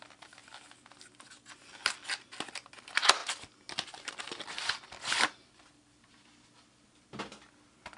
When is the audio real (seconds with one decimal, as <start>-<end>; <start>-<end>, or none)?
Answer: 0.4-2.8; 3.2-4.1

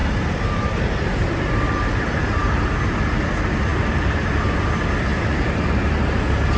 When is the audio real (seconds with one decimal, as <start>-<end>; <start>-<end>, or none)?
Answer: 2.4-3.0